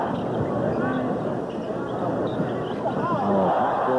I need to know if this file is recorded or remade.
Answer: recorded